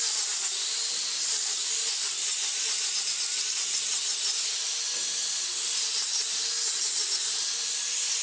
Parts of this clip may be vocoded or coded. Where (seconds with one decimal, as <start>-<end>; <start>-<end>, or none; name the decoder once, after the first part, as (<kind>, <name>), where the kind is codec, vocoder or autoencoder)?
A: none